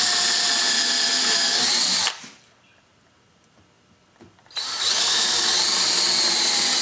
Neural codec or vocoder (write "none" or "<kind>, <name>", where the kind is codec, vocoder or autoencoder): none